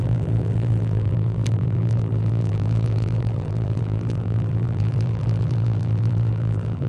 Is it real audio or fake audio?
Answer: fake